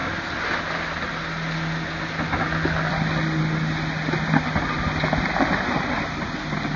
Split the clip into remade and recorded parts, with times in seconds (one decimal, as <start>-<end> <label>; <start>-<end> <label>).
0.0-6.8 recorded